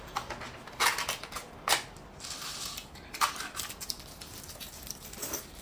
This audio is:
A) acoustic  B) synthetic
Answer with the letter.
A